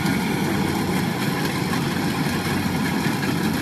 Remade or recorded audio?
recorded